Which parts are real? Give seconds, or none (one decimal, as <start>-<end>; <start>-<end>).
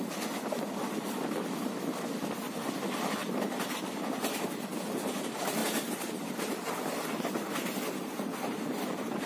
0.0-9.3